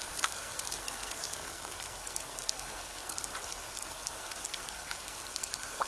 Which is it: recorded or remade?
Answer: remade